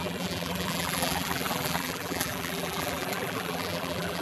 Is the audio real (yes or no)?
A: no